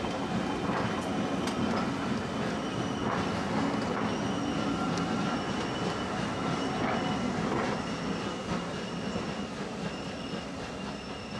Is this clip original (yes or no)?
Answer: yes